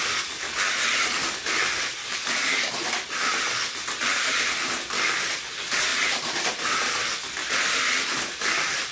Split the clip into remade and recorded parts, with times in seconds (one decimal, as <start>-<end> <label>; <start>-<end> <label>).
0.0-2.0 recorded; 2.0-2.7 remade; 2.7-8.9 recorded